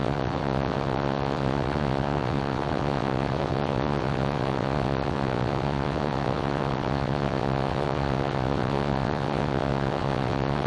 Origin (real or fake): fake